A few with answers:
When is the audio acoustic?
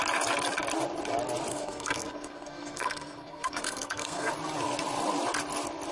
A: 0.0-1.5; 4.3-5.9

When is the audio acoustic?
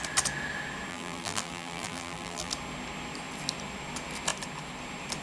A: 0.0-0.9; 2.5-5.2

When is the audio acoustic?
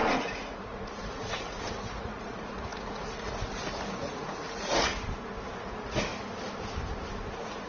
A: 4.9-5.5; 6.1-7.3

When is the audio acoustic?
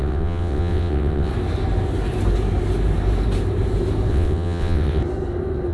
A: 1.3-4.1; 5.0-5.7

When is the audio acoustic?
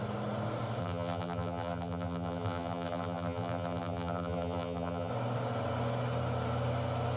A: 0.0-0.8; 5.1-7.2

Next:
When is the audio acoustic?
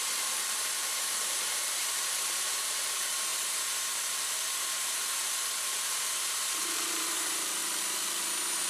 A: 7.6-8.7